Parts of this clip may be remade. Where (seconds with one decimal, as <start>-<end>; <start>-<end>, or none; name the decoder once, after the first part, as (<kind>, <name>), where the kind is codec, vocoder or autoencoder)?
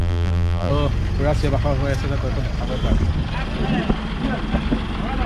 0.0-0.7 (vocoder, BigVGAN v2)